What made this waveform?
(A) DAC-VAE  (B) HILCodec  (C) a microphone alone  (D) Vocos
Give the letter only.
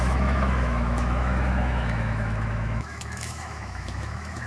A